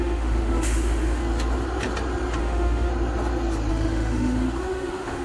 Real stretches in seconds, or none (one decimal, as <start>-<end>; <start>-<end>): 1.2-2.4; 2.9-3.7